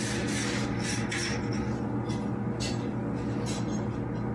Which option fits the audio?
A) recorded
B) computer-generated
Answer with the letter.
A